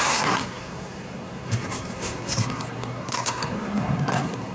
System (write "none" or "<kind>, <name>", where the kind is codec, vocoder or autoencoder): codec, SNAC